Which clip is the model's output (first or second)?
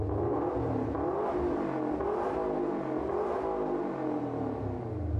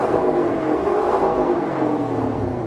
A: second